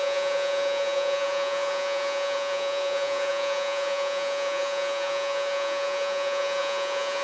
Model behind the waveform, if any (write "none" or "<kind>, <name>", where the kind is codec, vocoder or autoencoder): vocoder, Vocos